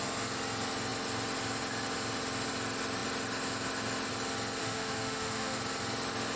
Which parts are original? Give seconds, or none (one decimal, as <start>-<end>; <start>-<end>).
0.0-4.6; 5.6-6.4